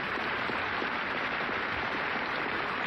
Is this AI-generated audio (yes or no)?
yes